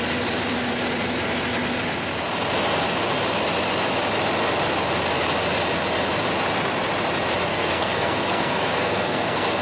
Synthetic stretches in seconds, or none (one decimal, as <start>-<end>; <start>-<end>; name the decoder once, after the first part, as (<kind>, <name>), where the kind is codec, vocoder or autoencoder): 7.5-9.6 (codec, SNAC)